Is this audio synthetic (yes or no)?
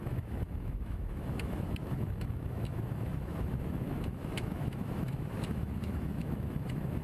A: yes